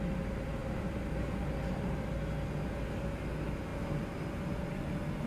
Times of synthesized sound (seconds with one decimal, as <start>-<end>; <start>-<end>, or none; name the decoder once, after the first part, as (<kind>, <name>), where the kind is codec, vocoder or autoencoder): 0.6-1.7 (vocoder, BigVGAN v2); 3.7-4.4